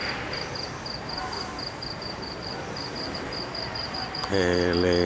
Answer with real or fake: fake